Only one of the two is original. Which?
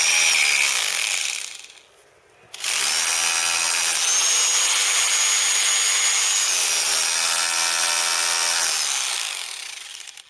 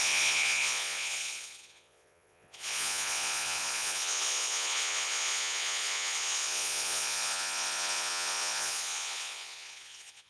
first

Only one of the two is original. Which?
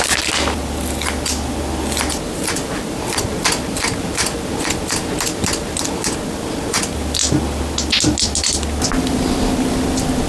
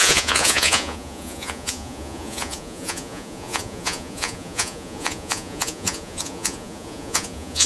first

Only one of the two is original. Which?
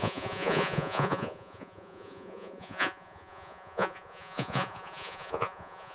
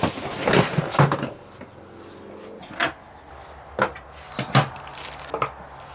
second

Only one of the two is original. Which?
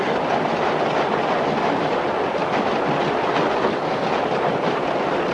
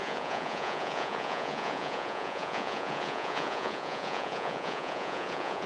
first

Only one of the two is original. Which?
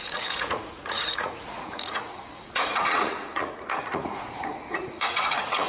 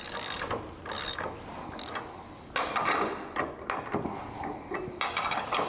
second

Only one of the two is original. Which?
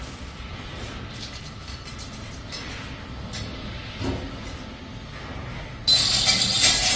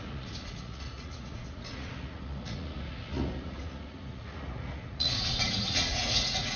first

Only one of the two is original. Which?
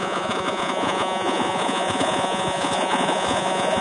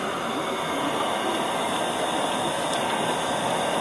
second